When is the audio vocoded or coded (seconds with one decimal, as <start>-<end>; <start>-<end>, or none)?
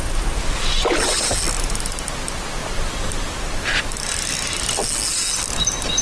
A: none